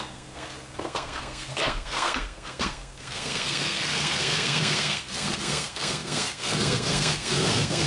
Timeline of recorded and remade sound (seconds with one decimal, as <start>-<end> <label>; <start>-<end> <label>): 0.0-7.9 remade